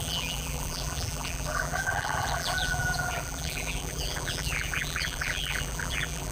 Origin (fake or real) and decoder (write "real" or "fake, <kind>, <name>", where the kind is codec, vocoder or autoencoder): fake, vocoder, BigVGAN v2